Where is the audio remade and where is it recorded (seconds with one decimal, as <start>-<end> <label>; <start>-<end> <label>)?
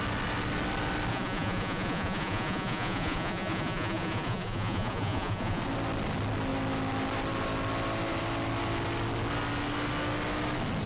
0.0-1.1 recorded; 1.1-5.6 remade; 5.6-10.9 recorded